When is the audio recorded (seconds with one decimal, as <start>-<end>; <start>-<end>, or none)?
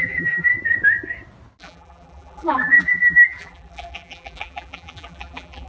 0.5-1.6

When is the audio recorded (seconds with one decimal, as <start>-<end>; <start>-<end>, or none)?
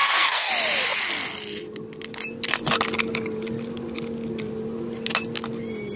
0.5-6.0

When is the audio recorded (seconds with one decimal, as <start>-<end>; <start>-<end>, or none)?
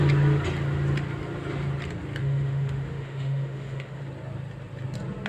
0.0-2.2; 4.0-5.3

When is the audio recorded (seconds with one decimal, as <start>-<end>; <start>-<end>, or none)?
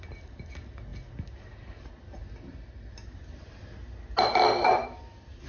0.0-5.5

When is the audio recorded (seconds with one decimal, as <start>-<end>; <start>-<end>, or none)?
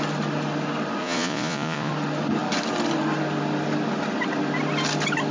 0.0-1.0; 1.9-5.3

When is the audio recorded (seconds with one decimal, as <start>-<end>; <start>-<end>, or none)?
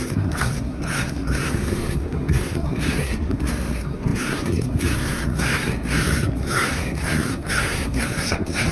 none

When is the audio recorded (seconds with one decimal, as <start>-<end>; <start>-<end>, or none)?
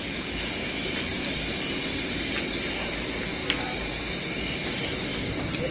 0.0-5.7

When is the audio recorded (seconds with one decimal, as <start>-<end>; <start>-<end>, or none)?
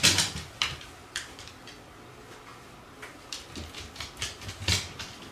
0.0-1.0; 1.9-5.3